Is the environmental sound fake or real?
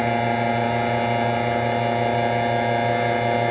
real